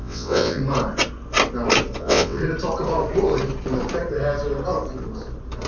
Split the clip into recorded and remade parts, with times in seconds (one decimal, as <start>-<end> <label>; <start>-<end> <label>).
0.0-0.6 remade; 0.6-2.0 recorded; 2.0-2.4 remade; 2.4-5.7 recorded